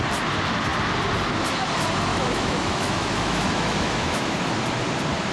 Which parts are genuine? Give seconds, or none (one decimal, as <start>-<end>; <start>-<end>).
0.0-2.1; 4.5-5.3